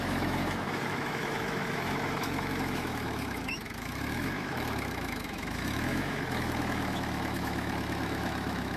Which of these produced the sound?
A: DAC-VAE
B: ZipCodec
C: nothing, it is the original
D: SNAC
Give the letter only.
A